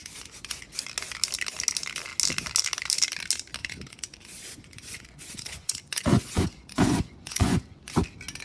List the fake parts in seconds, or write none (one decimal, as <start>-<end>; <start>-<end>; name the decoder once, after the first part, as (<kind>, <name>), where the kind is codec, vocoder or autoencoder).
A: 0.0-0.6 (vocoder, Vocos); 3.6-7.9

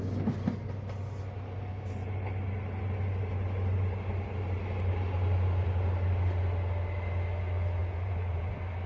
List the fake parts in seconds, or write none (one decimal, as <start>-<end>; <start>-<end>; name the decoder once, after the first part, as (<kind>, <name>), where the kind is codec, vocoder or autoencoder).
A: 7.8-8.5 (vocoder, Vocos)

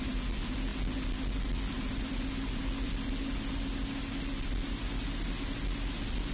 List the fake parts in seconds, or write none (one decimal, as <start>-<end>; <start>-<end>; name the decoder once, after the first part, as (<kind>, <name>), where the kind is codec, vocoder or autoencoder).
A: none

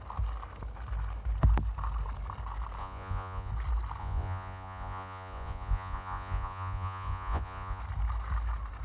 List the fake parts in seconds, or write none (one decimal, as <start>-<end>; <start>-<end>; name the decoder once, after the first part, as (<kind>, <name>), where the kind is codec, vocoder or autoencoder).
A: 2.8-3.5 (vocoder, Vocos); 4.0-7.8

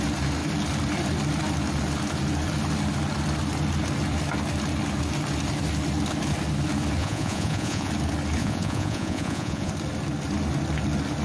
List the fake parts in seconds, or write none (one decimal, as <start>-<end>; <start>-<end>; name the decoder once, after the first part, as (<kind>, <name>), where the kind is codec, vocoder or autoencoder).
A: 7.0-7.9 (vocoder, Vocos); 8.4-9.7

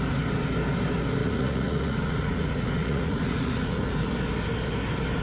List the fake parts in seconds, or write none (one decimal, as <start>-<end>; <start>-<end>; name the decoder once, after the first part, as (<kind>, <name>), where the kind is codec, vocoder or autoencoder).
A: 1.2-4.1 (vocoder, Vocos)

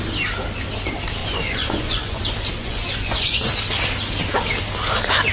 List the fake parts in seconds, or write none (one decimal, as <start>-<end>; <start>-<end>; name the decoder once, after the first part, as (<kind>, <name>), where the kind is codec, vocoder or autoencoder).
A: 1.2-2.2 (vocoder, Vocos); 2.6-3.5